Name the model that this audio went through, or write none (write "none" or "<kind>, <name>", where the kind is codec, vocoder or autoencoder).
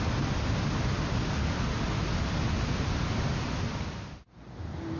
none